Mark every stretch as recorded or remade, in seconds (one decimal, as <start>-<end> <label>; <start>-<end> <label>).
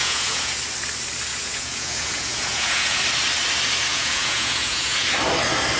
0.0-0.6 remade; 0.6-1.3 recorded; 1.3-3.0 remade; 3.0-3.9 recorded; 3.9-5.1 remade; 5.1-5.8 recorded